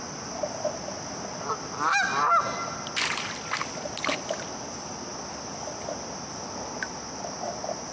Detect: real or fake real